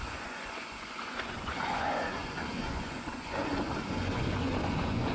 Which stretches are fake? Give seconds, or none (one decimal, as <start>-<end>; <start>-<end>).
0.0-5.1